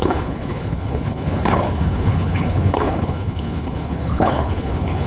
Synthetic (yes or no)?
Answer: yes